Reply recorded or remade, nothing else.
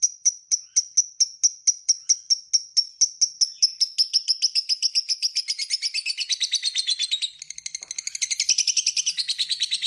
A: recorded